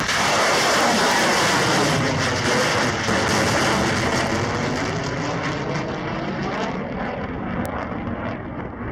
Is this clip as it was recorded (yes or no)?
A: yes